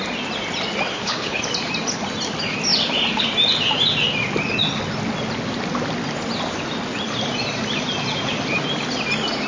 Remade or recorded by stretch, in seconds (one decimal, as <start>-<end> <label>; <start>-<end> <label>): 0.0-0.9 recorded; 0.9-1.4 remade; 1.4-9.5 recorded